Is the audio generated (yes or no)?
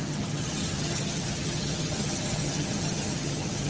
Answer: yes